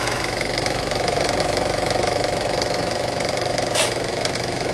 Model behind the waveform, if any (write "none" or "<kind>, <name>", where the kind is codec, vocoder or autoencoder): autoencoder, DAC-VAE